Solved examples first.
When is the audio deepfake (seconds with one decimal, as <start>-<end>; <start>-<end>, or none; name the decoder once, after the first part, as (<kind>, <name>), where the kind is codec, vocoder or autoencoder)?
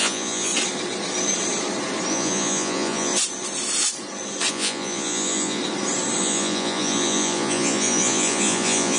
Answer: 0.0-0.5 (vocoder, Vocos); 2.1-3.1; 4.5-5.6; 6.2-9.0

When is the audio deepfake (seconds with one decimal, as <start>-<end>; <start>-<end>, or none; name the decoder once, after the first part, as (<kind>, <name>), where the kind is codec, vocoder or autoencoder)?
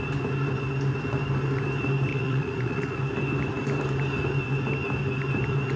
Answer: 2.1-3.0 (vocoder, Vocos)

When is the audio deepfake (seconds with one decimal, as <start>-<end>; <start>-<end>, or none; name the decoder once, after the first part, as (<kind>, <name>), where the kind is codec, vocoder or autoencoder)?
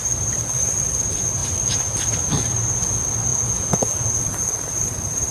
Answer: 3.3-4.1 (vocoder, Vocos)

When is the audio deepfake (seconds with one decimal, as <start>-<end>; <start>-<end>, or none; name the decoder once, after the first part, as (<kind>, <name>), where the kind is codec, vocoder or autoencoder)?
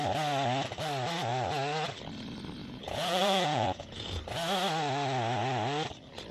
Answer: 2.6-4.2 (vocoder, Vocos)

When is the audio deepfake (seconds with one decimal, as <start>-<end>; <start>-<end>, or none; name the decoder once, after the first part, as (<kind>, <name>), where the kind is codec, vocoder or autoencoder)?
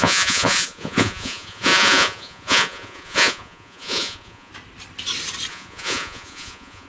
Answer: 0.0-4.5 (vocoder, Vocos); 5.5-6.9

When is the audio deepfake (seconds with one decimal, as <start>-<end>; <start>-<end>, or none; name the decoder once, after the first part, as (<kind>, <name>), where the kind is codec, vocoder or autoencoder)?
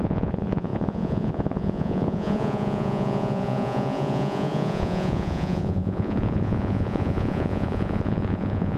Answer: 0.0-8.8 (vocoder, Vocos)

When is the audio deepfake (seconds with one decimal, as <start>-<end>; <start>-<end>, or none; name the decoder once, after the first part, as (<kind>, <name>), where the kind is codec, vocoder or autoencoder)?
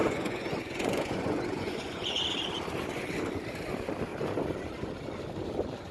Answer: 0.0-2.2 (vocoder, Vocos)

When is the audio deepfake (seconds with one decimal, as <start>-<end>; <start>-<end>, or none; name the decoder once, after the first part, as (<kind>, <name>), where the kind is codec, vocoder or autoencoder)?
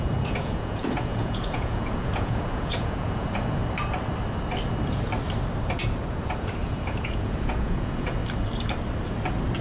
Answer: 0.0-3.6 (vocoder, Vocos); 6.1-8.2